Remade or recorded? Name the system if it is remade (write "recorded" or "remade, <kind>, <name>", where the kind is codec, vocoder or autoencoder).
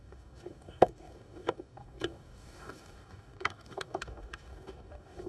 remade, codec, DAC